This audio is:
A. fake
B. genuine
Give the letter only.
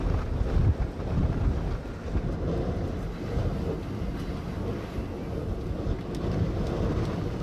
B